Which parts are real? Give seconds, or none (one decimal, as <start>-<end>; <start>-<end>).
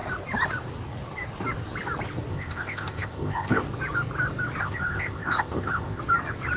0.0-2.3; 3.6-4.6; 6.0-6.6